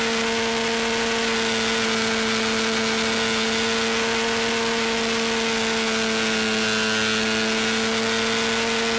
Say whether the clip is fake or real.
real